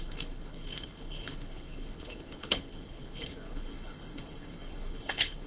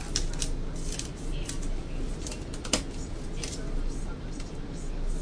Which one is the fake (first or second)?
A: first